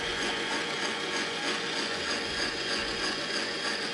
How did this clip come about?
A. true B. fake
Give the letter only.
B